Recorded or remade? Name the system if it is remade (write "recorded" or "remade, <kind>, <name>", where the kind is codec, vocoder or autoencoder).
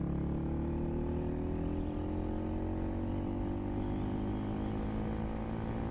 recorded